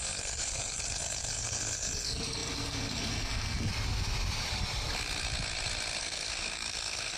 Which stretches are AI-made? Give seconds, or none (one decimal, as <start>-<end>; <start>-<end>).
0.0-3.7; 6.0-7.2